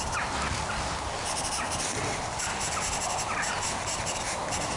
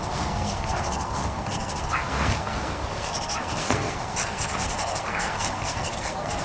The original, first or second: first